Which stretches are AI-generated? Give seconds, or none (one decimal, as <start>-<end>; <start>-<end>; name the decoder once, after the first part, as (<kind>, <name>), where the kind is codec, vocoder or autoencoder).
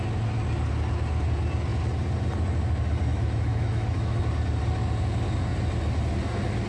3.1-4.2 (autoencoder, DAC-VAE)